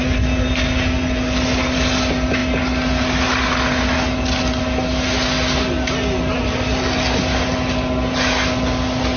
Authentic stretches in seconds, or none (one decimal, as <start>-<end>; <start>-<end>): 0.0-9.2